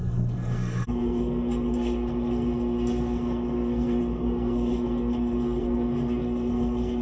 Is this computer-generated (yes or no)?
yes